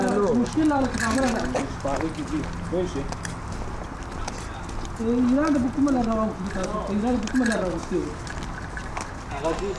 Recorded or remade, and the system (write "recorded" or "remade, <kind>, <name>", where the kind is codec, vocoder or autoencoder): recorded